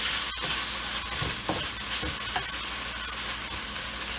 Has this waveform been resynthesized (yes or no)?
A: no